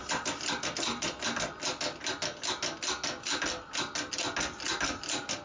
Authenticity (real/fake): real